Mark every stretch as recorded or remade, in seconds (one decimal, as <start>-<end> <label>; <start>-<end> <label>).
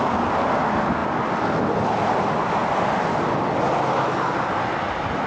0.0-5.3 recorded